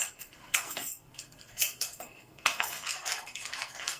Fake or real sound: fake